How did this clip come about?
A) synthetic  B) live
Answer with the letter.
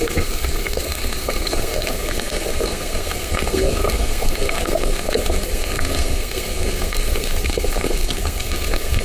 A